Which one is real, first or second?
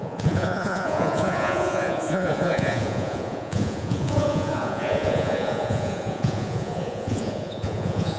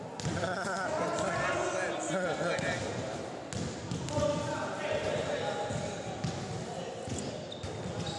second